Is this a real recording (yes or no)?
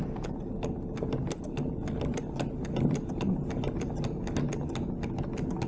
yes